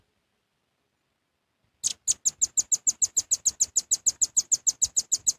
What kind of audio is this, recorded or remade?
recorded